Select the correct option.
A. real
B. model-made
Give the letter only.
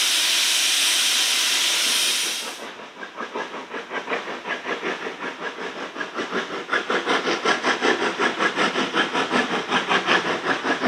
A